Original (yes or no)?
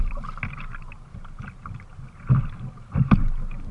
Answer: yes